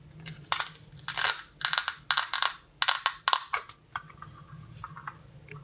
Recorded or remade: recorded